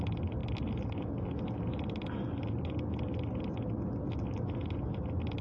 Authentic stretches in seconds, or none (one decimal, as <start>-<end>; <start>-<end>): 0.0-5.4